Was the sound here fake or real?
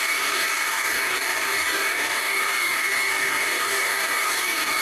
fake